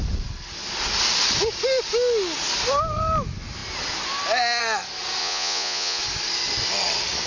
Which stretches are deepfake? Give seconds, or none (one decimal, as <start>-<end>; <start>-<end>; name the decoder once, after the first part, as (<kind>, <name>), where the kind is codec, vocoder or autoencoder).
5.2-6.0 (vocoder, Vocos)